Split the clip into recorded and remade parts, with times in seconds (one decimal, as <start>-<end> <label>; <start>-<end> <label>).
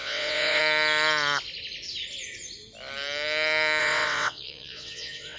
0.0-0.6 remade; 0.6-3.8 recorded; 3.8-5.4 remade